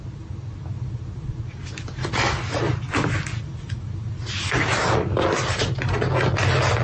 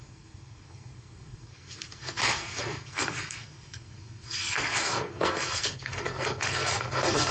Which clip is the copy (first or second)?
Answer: second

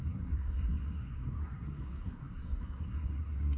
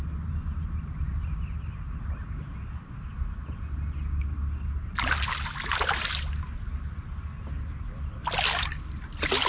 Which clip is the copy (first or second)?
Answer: first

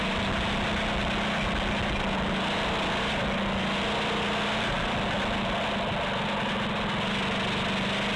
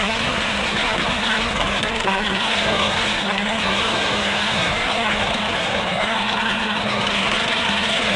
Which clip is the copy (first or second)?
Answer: second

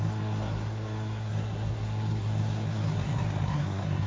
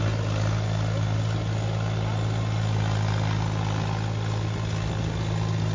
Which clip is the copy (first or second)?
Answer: first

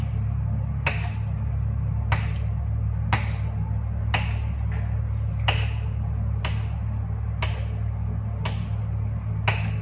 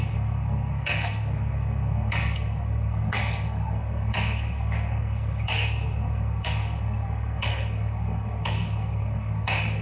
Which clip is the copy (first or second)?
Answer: second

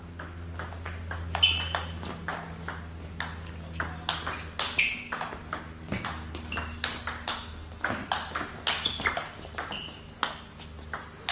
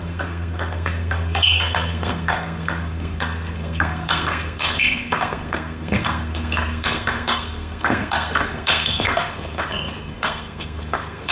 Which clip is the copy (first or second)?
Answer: second